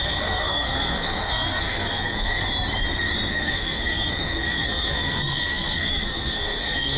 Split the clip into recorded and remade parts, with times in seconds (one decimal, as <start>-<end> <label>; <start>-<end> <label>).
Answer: 0.0-2.4 remade; 2.4-3.3 recorded; 3.3-7.0 remade